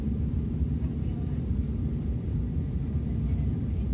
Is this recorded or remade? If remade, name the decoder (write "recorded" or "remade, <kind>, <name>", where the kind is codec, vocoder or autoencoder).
remade, vocoder, BigVGAN v2